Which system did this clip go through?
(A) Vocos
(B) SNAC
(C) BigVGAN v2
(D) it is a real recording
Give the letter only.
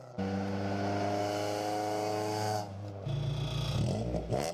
D